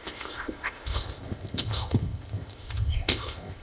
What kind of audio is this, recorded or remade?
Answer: remade